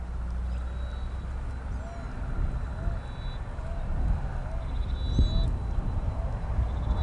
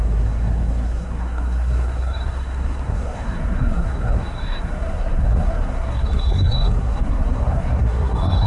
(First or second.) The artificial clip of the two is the second